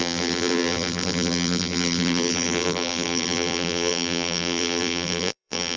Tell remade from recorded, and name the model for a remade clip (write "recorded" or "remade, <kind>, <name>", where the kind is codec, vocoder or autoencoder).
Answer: remade, vocoder, BigVGAN v2